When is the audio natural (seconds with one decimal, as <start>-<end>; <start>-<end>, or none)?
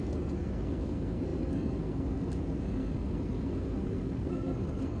none